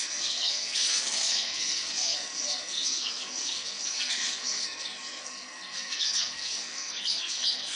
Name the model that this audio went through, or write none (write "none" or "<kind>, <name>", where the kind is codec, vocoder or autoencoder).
codec, SNAC